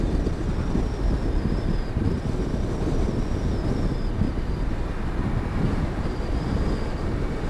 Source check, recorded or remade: recorded